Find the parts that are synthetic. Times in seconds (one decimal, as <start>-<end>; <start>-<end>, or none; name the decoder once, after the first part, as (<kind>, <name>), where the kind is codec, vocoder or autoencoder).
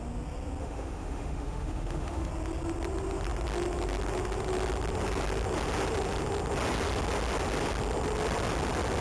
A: 0.6-2.3 (autoencoder, DAC-VAE)